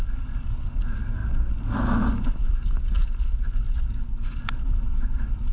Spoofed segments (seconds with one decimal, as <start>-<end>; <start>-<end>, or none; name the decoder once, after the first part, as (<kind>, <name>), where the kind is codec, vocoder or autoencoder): none